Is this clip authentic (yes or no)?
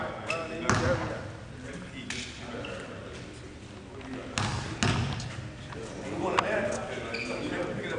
yes